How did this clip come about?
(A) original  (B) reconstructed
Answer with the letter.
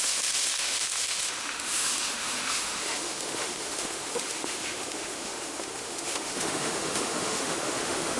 B